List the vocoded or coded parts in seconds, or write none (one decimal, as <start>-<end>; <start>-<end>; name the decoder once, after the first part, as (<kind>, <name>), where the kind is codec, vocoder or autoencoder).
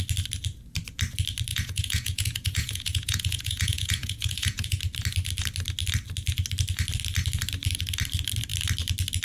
1.5-4.8 (vocoder, Vocos)